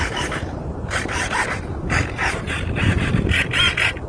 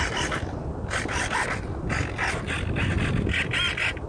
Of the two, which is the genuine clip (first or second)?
second